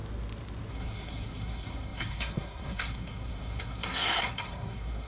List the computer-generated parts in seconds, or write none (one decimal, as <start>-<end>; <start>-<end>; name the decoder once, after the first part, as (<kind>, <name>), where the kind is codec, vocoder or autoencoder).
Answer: 0.7-5.1 (codec, SNAC)